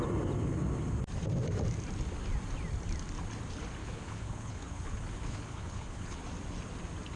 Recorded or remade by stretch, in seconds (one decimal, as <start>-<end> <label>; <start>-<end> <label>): 0.0-3.8 recorded; 3.8-6.2 remade; 6.2-7.2 recorded